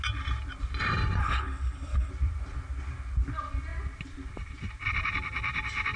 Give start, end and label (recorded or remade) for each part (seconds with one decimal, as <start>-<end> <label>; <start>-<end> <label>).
0.0-1.2 recorded; 1.2-2.1 remade; 2.1-6.0 recorded